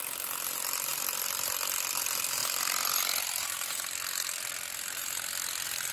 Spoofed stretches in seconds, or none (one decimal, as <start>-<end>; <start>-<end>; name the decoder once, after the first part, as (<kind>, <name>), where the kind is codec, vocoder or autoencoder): none